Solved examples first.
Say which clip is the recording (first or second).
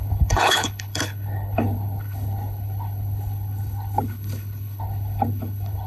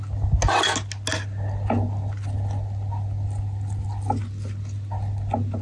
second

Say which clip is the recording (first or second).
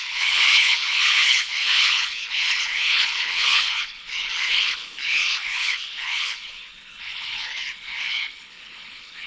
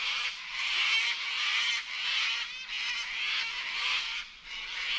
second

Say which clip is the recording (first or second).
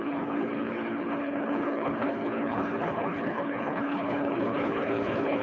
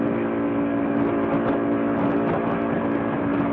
second